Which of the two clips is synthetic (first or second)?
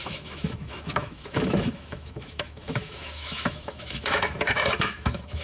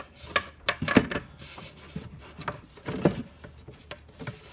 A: first